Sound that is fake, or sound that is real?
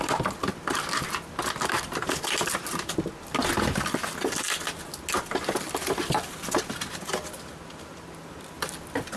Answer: real